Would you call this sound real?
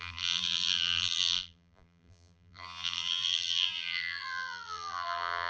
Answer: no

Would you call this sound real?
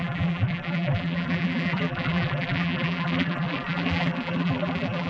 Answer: no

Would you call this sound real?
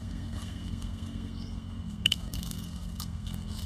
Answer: no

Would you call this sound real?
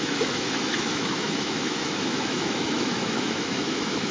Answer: no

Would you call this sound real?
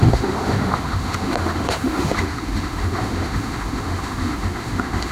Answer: no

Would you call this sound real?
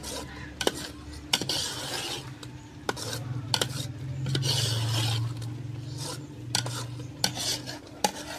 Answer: yes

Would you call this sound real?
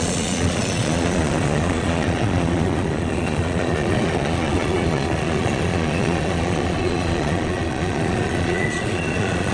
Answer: no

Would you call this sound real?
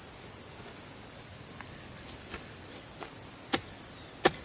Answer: yes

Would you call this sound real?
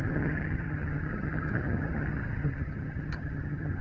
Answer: no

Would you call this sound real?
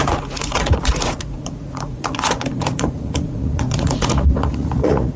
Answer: no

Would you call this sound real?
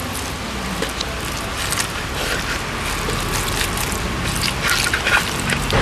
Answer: yes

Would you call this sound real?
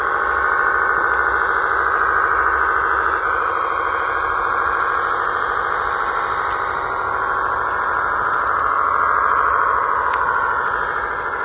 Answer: yes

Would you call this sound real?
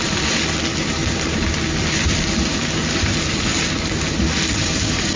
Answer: yes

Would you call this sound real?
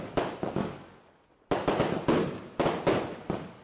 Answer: yes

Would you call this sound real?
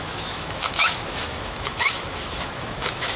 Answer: no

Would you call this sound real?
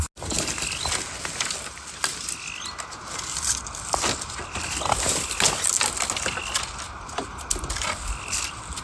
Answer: yes